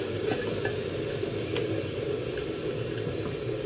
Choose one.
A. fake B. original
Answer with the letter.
B